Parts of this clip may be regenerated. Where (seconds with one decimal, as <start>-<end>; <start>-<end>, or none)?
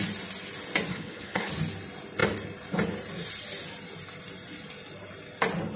0.9-1.5